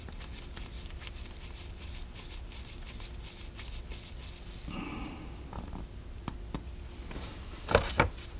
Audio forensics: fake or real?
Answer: real